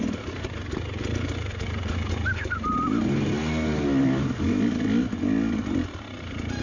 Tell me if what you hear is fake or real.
real